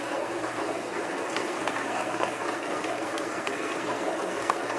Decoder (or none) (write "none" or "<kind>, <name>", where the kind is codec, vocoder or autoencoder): codec, SNAC